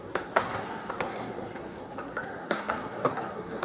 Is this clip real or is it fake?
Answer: fake